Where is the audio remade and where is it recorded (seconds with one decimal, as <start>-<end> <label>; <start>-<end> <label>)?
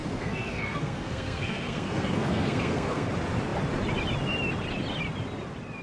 0.0-3.1 remade; 3.1-5.8 recorded